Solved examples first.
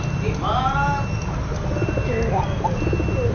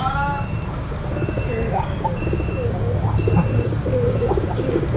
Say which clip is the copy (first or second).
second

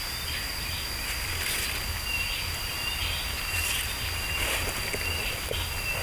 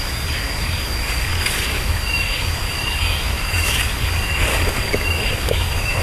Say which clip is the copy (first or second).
second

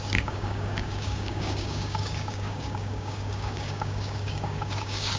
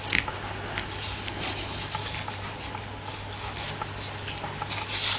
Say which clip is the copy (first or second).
first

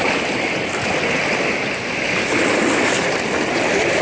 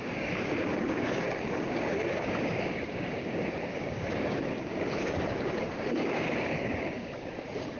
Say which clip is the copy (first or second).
second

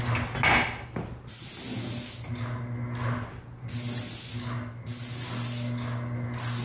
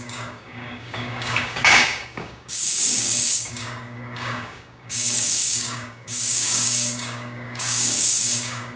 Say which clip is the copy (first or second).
second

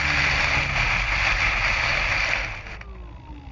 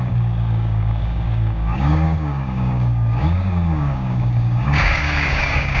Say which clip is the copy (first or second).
second